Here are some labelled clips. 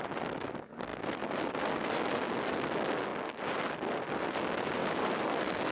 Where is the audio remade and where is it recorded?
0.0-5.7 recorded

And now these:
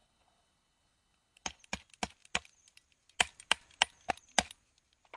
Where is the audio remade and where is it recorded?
0.0-1.6 remade; 1.6-5.2 recorded

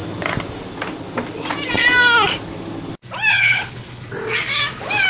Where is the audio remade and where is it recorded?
0.0-3.3 recorded; 3.3-4.0 remade; 4.0-5.1 recorded

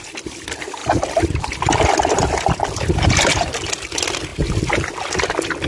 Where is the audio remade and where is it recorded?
0.0-5.7 recorded

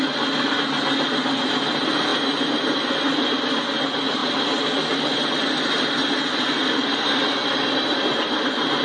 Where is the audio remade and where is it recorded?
0.0-8.8 recorded

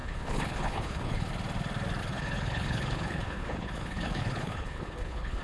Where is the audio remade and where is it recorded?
0.0-1.3 remade; 1.3-2.0 recorded; 2.0-5.4 remade

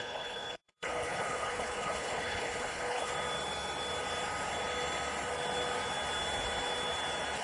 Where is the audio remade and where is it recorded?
0.0-3.1 remade; 3.1-7.4 recorded